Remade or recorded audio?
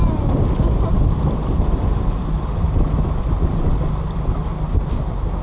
recorded